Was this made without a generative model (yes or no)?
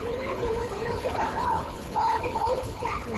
no